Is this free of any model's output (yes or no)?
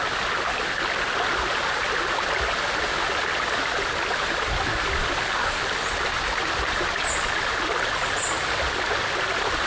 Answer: yes